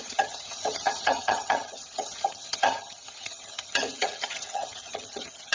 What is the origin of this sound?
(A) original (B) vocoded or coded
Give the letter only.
B